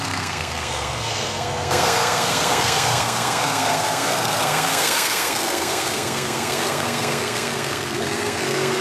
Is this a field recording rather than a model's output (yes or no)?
no